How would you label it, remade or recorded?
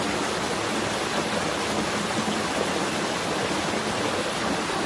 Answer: recorded